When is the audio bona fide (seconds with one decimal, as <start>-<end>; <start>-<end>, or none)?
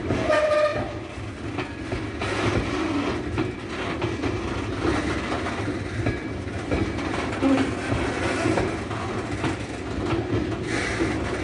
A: 0.0-11.4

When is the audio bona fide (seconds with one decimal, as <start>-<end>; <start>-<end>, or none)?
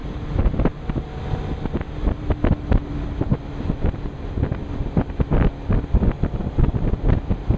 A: 0.0-7.6